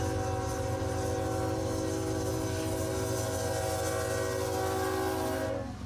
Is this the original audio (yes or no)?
yes